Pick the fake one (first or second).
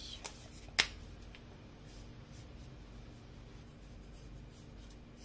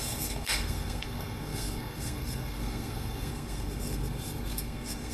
second